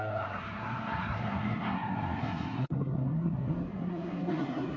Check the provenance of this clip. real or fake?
fake